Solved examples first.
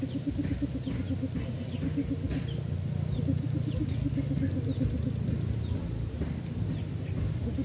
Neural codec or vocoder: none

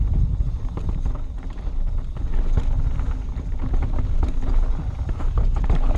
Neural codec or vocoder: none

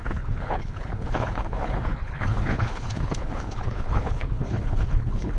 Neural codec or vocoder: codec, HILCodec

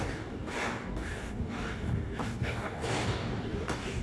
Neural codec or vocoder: codec, DAC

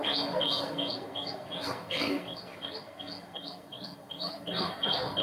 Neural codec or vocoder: codec, SNAC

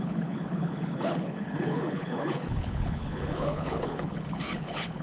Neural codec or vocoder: codec, HILCodec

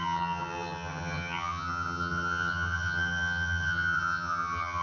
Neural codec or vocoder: vocoder, HiFi-GAN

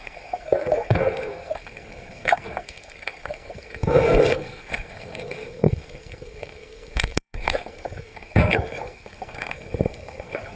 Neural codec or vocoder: codec, SNAC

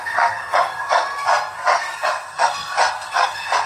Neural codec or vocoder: codec, SNAC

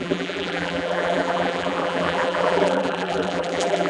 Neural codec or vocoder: vocoder, BigVGAN v2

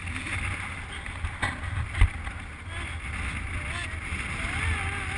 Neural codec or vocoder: none